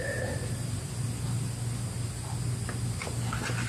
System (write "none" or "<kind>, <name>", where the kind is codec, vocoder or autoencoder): none